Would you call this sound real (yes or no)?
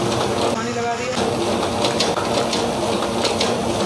yes